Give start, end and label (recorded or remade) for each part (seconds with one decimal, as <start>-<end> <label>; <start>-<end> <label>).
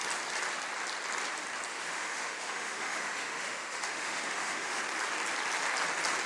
0.0-1.7 recorded; 1.7-4.8 remade; 4.8-6.3 recorded